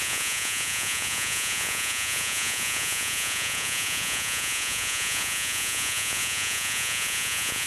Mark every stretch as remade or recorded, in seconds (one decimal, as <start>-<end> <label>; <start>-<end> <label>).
0.0-7.7 remade

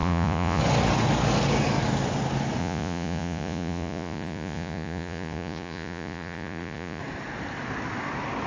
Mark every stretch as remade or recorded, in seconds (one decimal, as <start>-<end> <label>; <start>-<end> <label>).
0.0-0.6 remade; 0.6-2.6 recorded; 2.6-7.0 remade; 7.0-8.5 recorded

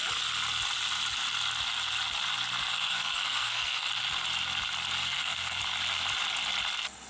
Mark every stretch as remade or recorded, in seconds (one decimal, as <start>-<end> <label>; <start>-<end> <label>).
0.0-2.7 recorded; 2.7-3.9 remade; 3.9-5.0 recorded; 5.0-5.6 remade; 5.6-7.1 recorded